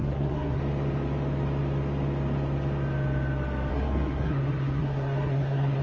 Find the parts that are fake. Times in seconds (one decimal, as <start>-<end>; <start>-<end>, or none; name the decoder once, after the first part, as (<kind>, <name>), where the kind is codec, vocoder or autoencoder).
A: 0.0-0.6 (codec, SNAC); 3.7-5.8